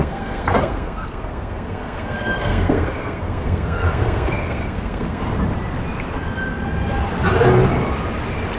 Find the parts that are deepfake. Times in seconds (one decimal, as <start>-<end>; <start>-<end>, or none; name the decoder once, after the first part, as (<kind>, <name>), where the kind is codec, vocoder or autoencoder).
0.0-5.2 (codec, SNAC)